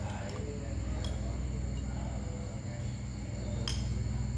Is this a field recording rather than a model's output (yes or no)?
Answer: yes